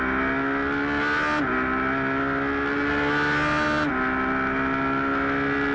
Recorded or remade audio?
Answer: recorded